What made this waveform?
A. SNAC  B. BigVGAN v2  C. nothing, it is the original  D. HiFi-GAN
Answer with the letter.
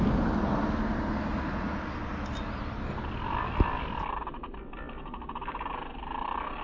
C